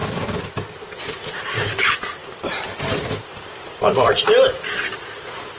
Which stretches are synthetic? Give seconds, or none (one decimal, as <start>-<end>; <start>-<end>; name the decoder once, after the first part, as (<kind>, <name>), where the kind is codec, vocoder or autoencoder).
2.2-4.1 (vocoder, BigVGAN v2)